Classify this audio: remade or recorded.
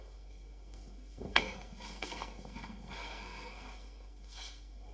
remade